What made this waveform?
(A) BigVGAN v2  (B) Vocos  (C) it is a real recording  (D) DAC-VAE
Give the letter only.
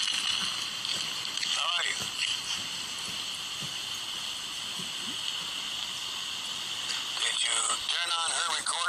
C